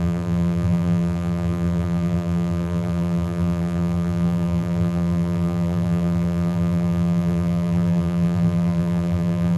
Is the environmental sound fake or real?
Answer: fake